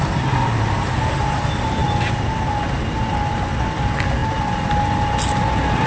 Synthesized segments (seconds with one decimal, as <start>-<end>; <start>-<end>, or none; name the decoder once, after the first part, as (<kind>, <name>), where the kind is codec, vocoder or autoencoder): none